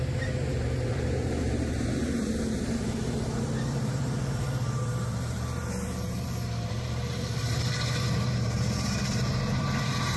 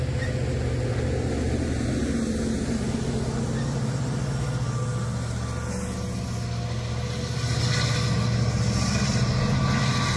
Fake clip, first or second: first